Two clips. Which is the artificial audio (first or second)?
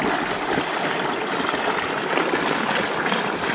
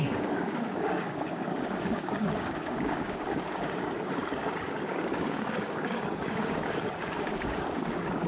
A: second